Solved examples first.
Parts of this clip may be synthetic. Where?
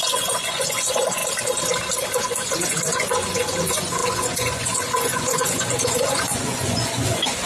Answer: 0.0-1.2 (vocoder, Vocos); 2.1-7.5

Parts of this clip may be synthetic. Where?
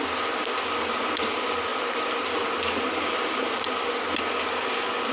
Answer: none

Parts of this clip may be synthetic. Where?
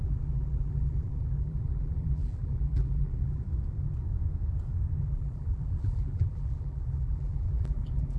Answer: 0.0-3.4 (vocoder, BigVGAN v2); 5.0-8.2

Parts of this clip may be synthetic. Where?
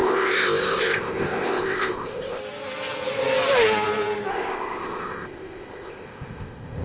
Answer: 0.0-2.4 (codec, ZipCodec); 4.3-6.8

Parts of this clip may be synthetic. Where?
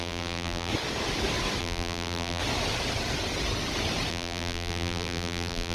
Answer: 0.0-0.7 (vocoder, BigVGAN v2); 1.6-2.4; 4.1-5.7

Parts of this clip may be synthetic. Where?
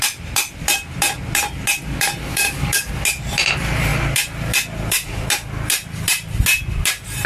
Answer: 2.3-2.9 (codec, DAC)